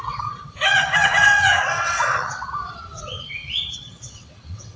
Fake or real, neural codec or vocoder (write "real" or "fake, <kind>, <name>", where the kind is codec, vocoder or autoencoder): fake, vocoder, WaveNeXt